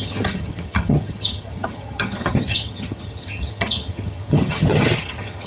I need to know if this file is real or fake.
fake